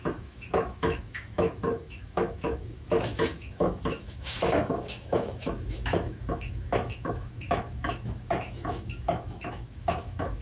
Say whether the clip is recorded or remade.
remade